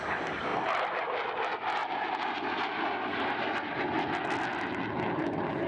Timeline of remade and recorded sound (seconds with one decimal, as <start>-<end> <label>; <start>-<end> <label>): 0.0-5.7 recorded